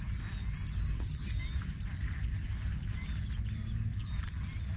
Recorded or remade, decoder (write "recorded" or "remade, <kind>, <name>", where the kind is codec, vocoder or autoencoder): recorded